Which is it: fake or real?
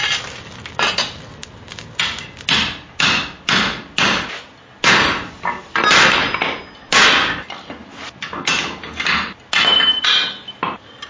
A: real